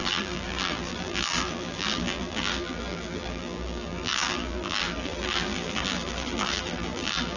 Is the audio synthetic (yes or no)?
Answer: yes